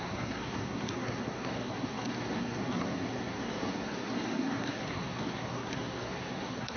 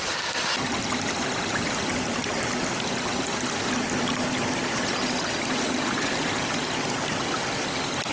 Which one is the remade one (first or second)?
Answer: first